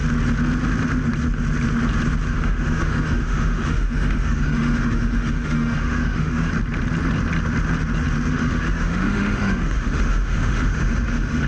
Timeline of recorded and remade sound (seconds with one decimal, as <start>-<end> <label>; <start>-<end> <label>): 0.0-2.3 recorded; 2.3-6.5 remade; 6.5-8.3 recorded; 8.3-11.5 remade